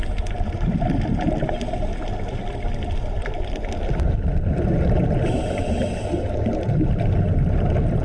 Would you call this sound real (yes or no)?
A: yes